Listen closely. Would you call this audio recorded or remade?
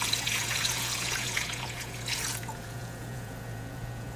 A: remade